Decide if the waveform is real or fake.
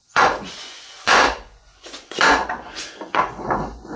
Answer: fake